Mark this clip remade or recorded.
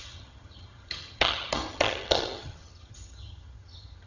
remade